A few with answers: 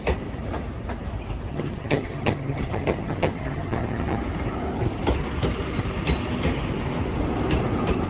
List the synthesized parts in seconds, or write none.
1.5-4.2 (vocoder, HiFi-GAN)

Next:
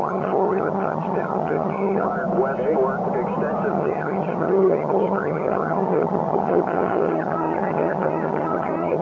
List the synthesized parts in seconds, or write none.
0.0-2.1 (vocoder, HiFi-GAN); 3.7-9.0